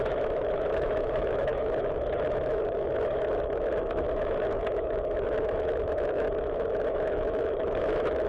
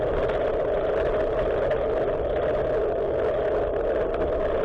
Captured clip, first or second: second